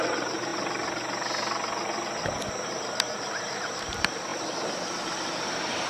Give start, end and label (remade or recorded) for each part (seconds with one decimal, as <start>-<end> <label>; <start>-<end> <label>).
0.0-0.5 remade; 0.5-2.5 recorded; 2.5-4.3 remade; 4.3-5.3 recorded; 5.3-5.9 remade